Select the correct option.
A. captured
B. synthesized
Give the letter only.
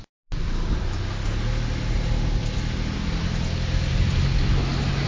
A